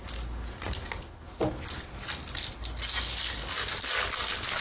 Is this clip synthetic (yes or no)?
no